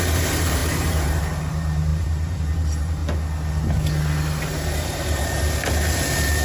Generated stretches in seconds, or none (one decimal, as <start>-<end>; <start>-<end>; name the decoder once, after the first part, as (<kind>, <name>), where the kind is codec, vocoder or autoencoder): 0.0-3.0 (vocoder, BigVGAN v2); 4.4-6.4